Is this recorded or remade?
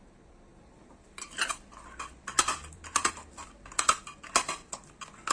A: recorded